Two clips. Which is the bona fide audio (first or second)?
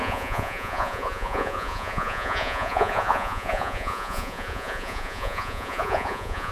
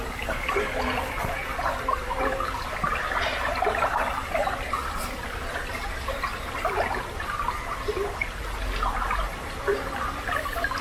second